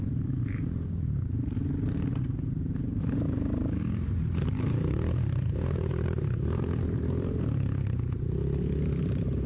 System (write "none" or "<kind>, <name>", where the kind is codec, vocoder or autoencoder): vocoder, BigVGAN v2